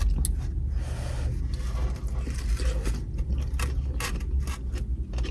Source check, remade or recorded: recorded